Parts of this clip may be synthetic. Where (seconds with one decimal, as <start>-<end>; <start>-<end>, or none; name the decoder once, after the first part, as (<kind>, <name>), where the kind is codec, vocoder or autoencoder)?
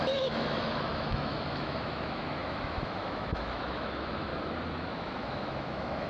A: 0.0-4.3 (autoencoder, DAC-VAE); 4.8-6.1